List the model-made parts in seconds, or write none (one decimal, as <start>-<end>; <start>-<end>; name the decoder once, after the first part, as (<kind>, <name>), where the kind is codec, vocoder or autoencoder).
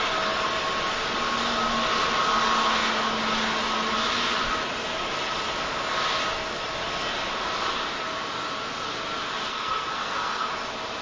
9.5-10.5 (codec, SNAC)